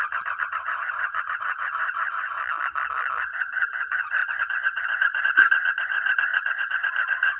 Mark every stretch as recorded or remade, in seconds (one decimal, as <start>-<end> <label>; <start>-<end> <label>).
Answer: 0.0-2.4 remade; 2.4-3.2 recorded; 3.2-7.4 remade